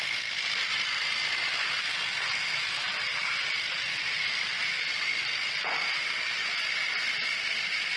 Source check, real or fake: fake